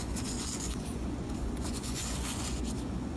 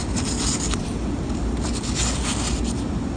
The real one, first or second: second